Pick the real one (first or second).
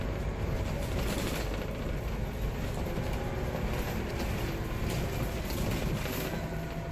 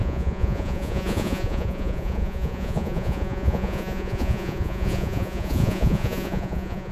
first